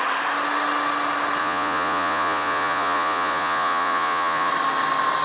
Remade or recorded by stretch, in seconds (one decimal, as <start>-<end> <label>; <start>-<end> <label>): 0.0-1.4 recorded; 1.4-4.5 remade; 4.5-5.2 recorded